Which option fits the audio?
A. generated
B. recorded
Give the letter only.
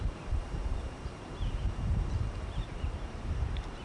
A